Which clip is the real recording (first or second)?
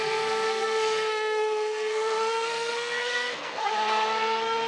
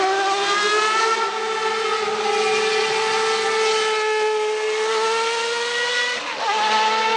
second